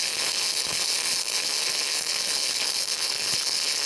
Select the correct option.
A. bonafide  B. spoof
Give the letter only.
B